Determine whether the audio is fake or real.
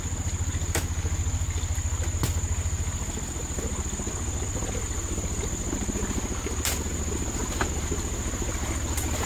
real